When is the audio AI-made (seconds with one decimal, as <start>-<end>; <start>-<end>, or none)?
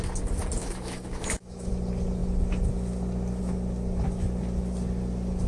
0.6-1.7